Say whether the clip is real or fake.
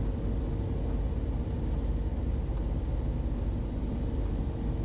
real